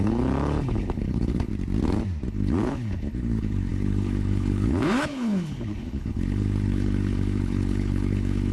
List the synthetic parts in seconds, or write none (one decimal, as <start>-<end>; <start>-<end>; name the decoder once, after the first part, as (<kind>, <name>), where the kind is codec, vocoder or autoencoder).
0.0-1.5 (codec, HILCodec); 2.3-8.5